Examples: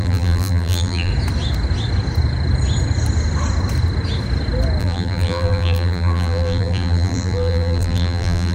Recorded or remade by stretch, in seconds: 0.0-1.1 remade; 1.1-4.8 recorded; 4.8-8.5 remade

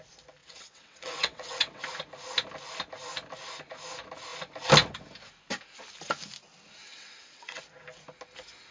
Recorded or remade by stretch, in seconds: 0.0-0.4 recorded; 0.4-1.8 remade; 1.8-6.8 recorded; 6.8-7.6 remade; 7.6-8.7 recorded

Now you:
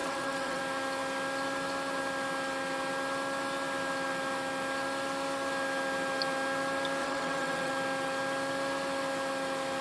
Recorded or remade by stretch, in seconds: 0.0-0.6 remade; 0.6-7.0 recorded; 7.0-7.7 remade; 7.7-9.8 recorded

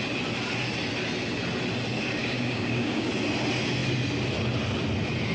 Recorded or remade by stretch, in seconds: 0.0-2.2 recorded; 2.2-3.1 remade; 3.1-5.3 recorded

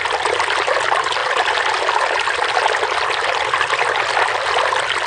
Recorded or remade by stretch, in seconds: 0.0-5.1 recorded

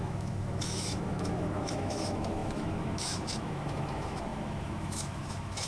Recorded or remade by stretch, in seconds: 0.0-5.7 remade